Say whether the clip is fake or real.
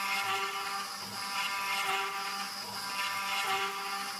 real